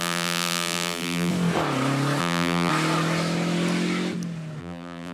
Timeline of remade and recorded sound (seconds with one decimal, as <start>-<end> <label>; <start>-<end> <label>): 0.0-1.3 remade; 1.3-2.2 recorded; 2.2-2.7 remade; 2.7-4.6 recorded; 4.6-5.1 remade